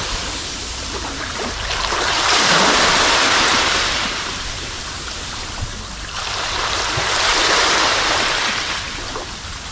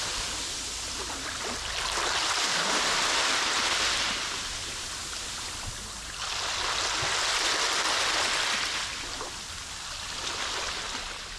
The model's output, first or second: first